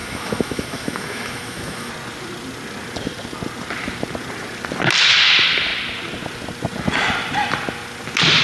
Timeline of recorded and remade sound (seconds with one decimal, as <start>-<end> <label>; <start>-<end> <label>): 0.0-1.9 remade; 1.9-8.4 recorded